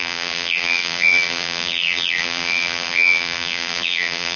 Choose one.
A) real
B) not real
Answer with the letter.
B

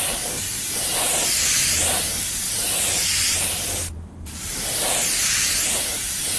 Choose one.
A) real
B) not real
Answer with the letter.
B